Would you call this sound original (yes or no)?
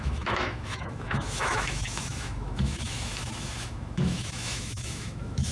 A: no